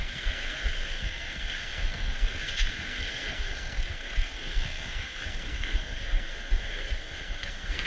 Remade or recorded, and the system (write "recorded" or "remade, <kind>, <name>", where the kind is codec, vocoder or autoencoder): remade, codec, SNAC